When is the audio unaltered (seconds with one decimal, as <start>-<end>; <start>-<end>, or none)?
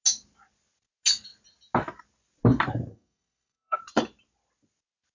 0.0-2.9; 3.8-5.1